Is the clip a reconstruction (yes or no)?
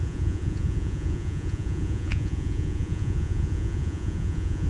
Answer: yes